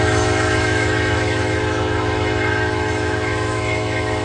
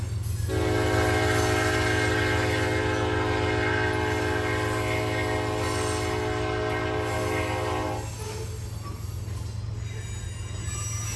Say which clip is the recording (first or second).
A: second